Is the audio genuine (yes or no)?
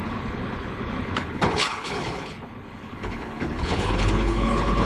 no